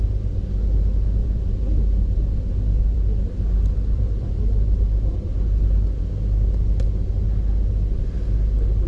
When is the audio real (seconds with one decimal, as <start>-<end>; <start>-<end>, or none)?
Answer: 0.0-1.2; 4.4-8.9